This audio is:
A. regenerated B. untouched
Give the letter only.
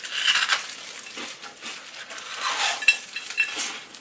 B